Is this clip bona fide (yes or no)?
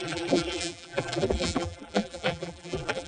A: no